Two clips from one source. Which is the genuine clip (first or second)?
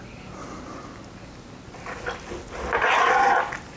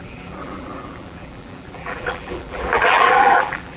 first